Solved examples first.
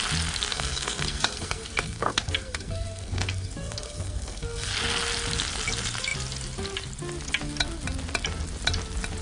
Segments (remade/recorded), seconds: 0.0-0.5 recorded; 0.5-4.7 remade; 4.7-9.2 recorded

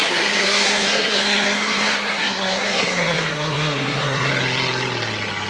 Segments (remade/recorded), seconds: 0.0-4.3 remade; 4.3-5.5 recorded